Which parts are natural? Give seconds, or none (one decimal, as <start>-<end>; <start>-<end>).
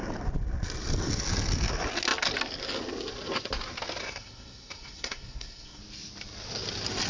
0.0-4.0; 5.8-7.1